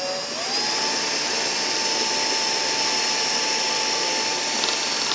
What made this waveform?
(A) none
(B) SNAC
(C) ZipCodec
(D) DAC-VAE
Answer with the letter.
A